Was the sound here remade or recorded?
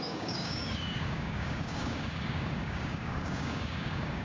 remade